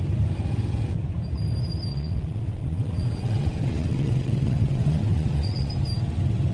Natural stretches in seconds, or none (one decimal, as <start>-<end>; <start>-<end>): 0.0-1.9; 5.7-6.5